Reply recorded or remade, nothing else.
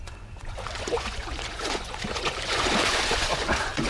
remade